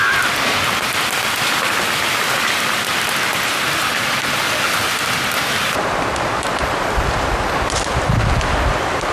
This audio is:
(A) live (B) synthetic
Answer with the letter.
A